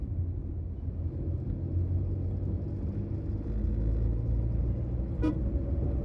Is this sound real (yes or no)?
yes